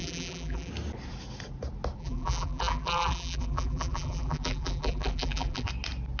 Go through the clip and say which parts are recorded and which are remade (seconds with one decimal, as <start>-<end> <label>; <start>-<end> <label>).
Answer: 0.0-0.7 remade; 0.7-2.0 recorded; 2.0-5.7 remade; 5.7-6.2 recorded